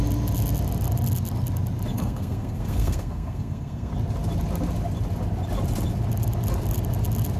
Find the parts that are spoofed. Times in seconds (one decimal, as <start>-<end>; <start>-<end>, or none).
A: 1.9-3.9